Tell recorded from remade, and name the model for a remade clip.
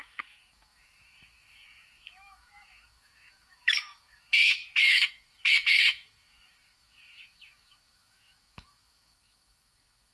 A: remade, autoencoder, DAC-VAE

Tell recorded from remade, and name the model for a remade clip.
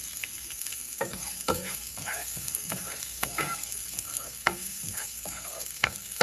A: remade, codec, SNAC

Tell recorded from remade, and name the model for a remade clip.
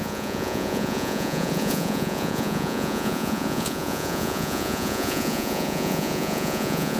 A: remade, vocoder, Vocos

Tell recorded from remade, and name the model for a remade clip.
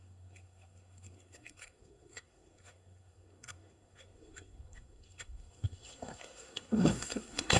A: remade, codec, SNAC